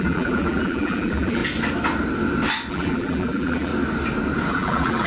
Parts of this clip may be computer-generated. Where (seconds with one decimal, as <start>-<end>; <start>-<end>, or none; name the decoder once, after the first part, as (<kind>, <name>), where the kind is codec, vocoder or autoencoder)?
0.0-1.4 (vocoder, BigVGAN v2); 2.7-3.7; 4.5-5.1